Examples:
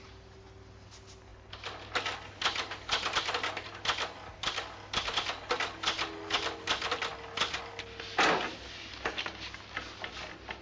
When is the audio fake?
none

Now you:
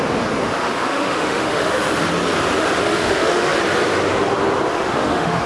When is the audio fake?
0.6-2.1 (autoencoder, DAC-VAE); 2.6-3.6; 4.7-5.5

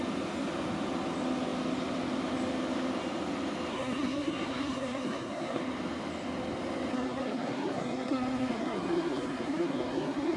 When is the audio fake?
3.7-5.6 (codec, SNAC); 6.9-10.4

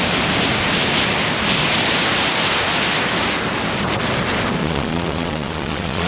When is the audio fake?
4.6-6.1 (vocoder, Vocos)

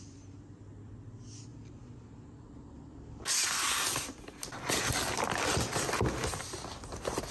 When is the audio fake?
none